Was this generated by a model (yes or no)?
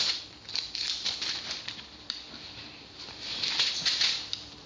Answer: no